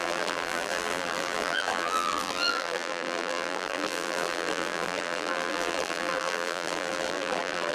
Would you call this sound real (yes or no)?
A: no